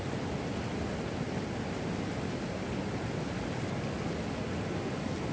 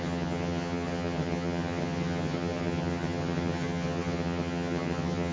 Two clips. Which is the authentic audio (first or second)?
first